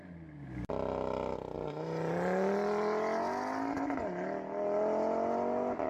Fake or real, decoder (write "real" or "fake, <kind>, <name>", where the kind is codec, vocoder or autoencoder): real